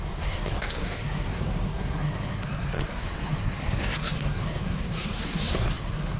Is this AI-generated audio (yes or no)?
yes